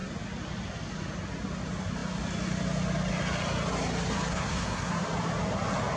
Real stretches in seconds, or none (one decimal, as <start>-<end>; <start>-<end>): 0.0-4.3; 4.9-6.0